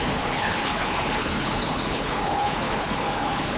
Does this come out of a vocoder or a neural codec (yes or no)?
yes